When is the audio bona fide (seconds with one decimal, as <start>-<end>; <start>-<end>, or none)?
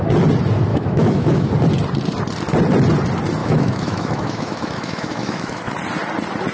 0.0-0.7; 1.5-3.4; 5.7-6.5